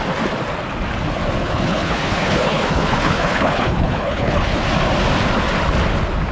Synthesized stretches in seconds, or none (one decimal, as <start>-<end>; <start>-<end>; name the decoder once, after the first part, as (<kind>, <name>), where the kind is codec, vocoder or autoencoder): 1.4-4.6 (codec, HILCodec)